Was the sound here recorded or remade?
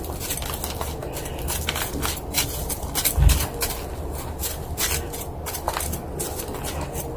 recorded